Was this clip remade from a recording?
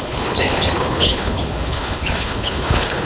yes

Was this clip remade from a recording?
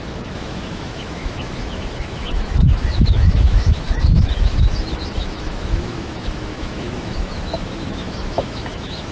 yes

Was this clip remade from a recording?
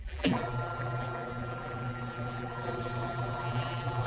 yes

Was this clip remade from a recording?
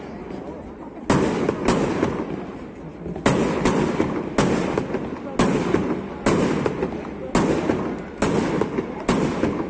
no